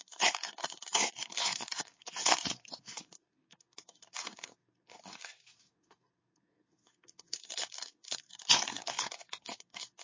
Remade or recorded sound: remade